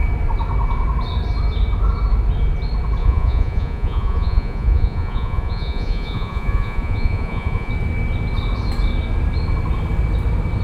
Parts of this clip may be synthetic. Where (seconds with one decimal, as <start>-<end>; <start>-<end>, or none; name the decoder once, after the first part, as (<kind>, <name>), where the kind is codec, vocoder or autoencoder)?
3.0-7.7 (vocoder, Vocos)

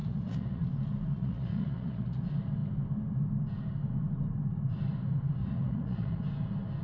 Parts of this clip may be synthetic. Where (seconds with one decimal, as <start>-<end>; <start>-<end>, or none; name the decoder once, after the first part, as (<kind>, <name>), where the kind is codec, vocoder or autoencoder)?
0.0-0.7 (vocoder, Vocos); 1.1-2.2; 5.4-6.2

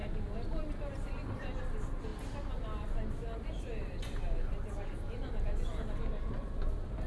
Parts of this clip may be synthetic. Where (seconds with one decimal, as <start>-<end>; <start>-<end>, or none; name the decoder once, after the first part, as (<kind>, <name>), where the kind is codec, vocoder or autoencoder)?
none

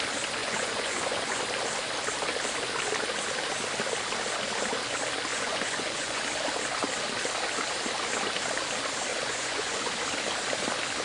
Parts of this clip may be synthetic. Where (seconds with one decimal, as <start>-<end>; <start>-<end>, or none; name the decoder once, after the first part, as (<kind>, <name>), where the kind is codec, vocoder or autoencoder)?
0.4-1.4 (vocoder, Vocos); 5.3-6.2; 9.1-9.9

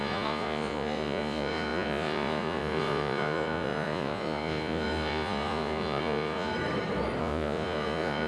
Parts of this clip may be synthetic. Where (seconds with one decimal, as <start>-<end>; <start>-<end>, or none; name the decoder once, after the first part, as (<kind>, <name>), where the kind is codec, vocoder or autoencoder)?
0.0-6.5 (vocoder, Vocos); 7.2-8.3

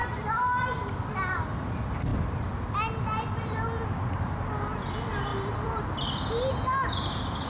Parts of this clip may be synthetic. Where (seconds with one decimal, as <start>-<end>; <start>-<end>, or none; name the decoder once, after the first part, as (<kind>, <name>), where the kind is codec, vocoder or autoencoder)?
none

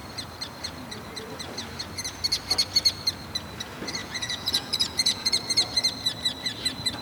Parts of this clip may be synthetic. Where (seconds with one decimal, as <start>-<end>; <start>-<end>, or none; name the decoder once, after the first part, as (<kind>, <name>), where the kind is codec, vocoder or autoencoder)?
4.0-5.4 (vocoder, Vocos)